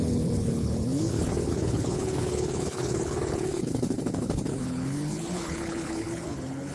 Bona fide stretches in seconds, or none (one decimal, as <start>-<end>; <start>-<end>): none